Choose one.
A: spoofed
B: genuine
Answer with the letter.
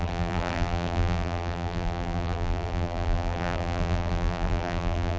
A